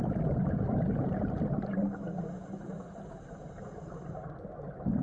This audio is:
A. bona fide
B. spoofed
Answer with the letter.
A